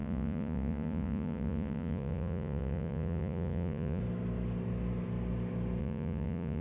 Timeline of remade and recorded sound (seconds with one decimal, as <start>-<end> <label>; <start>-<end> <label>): 0.0-4.0 remade; 4.0-5.8 recorded; 5.8-6.6 remade